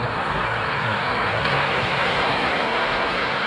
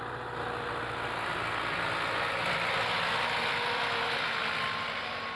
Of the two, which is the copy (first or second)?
first